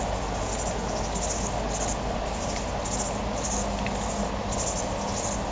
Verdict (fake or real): real